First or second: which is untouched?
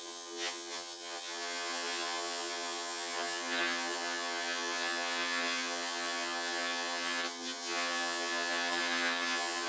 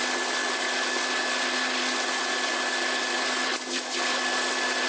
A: second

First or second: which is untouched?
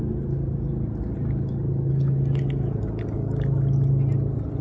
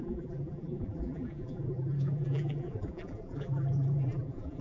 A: first